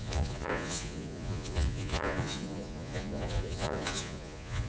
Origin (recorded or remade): remade